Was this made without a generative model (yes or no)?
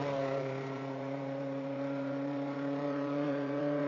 no